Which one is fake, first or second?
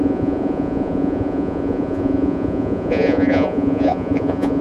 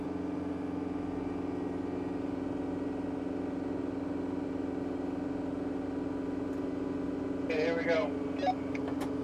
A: first